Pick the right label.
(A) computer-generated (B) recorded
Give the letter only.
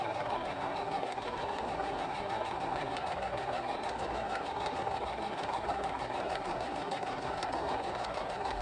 A